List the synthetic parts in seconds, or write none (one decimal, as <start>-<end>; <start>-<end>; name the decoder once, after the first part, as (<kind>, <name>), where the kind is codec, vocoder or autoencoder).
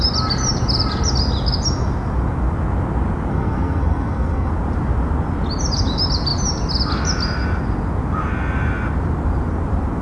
3.3-4.5 (codec, SNAC)